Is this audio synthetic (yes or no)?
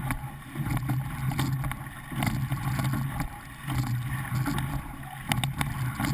no